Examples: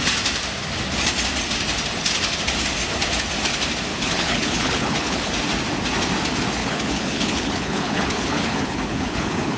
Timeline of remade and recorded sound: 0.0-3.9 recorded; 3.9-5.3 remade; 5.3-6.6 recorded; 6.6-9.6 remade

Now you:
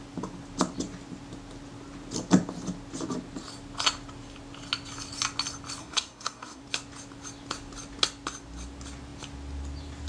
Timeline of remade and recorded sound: 0.0-5.8 recorded; 5.8-6.6 remade; 6.6-10.1 recorded